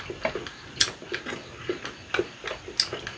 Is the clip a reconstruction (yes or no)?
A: no